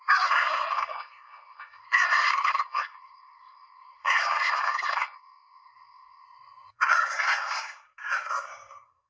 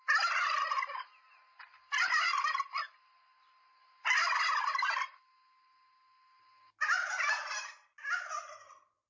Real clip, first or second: second